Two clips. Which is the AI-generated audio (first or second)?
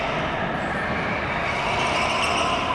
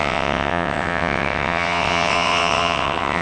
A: second